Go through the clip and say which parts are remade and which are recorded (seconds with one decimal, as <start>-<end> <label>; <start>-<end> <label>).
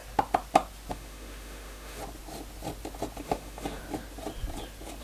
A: 0.0-0.9 recorded; 0.9-2.0 remade; 2.0-3.2 recorded; 3.2-3.8 remade; 3.8-5.0 recorded